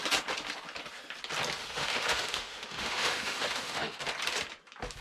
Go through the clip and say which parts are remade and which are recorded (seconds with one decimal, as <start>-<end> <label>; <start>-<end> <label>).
0.0-1.6 recorded; 1.6-4.0 remade; 4.0-5.0 recorded